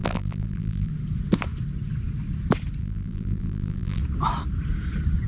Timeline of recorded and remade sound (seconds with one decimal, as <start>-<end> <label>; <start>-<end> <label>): 0.0-0.9 remade; 0.9-2.8 recorded; 2.8-4.0 remade; 4.0-5.3 recorded